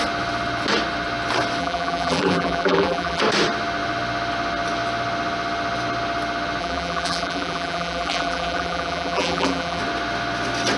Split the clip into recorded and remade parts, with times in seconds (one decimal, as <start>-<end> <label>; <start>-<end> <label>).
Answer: 0.0-1.6 recorded; 1.6-3.2 remade; 3.2-6.6 recorded; 6.6-9.8 remade; 9.8-10.8 recorded